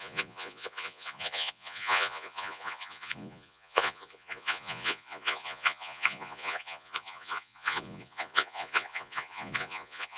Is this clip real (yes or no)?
no